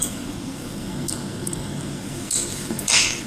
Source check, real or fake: fake